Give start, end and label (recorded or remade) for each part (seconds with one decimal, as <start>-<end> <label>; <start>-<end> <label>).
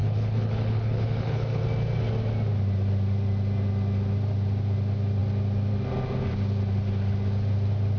0.0-1.6 remade; 1.6-8.0 recorded